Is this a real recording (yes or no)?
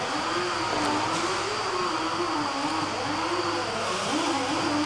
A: yes